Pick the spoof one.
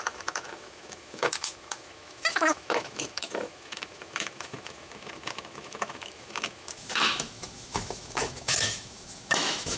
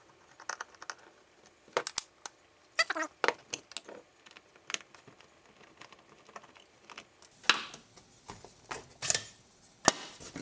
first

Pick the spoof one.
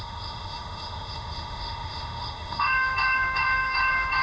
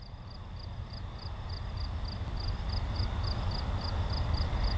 first